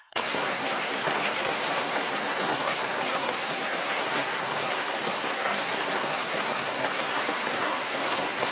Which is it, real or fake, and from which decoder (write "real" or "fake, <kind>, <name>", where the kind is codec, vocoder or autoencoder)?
fake, codec, SNAC